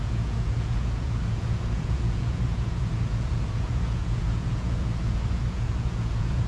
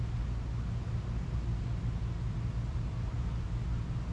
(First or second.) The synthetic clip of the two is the first